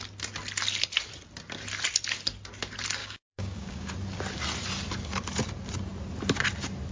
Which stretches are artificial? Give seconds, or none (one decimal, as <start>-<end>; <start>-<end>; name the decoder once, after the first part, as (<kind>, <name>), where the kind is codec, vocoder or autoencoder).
3.0-3.9 (codec, DAC)